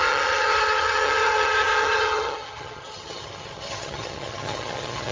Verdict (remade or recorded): remade